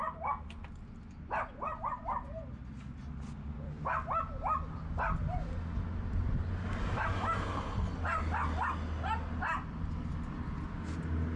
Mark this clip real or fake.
real